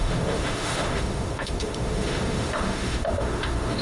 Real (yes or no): no